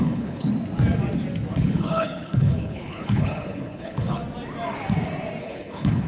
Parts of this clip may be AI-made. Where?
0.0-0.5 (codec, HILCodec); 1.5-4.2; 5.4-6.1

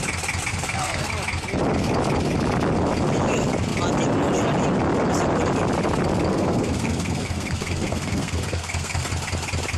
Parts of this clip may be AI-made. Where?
0.5-1.1 (codec, SNAC); 6.3-9.1

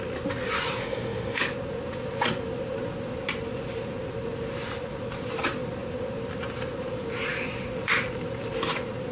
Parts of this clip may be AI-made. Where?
0.8-1.4 (autoencoder, DAC-VAE)

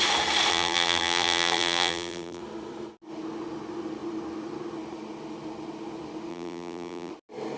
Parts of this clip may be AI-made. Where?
0.5-2.4 (vocoder, BigVGAN v2); 6.3-7.1

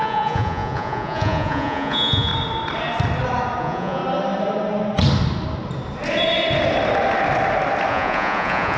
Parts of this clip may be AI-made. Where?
0.0-2.3 (vocoder, Vocos); 3.6-4.0; 7.9-8.8

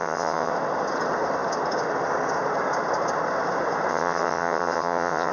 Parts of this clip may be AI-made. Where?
0.0-0.5 (vocoder, HiFi-GAN); 3.9-5.3

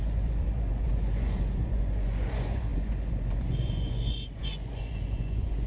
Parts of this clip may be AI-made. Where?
0.0-5.7 (vocoder, Vocos)

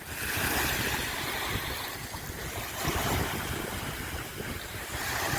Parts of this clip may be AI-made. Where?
4.3-5.4 (vocoder, BigVGAN v2)